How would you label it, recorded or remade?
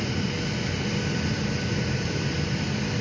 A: recorded